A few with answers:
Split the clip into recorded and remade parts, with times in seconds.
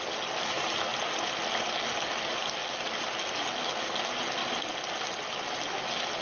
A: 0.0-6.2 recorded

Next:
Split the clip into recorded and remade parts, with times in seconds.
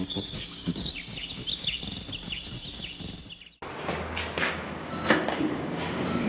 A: 0.0-0.9 remade; 0.9-4.4 recorded; 4.4-6.3 remade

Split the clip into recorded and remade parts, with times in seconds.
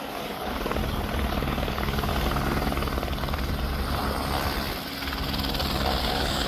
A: 0.0-0.8 remade; 0.8-1.3 recorded; 1.3-2.1 remade; 2.1-6.0 recorded; 6.0-6.5 remade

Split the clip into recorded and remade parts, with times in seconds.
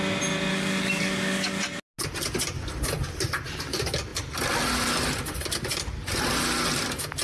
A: 0.0-0.5 recorded; 0.5-1.6 remade; 1.6-7.2 recorded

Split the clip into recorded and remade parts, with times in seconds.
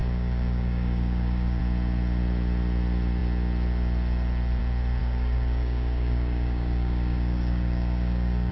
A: 0.0-1.6 remade; 1.6-5.0 recorded; 5.0-8.5 remade